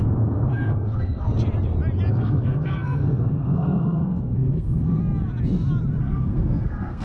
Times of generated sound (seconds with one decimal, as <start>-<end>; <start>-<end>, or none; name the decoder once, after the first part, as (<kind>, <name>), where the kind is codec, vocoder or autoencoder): 0.0-1.3 (codec, SNAC); 2.1-5.0; 6.0-7.0